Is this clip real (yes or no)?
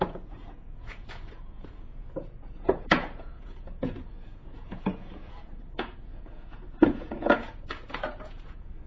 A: no